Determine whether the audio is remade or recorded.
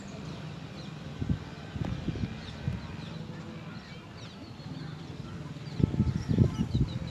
recorded